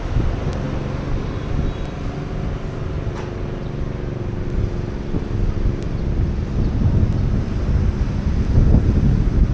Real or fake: real